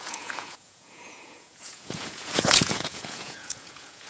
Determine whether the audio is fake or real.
fake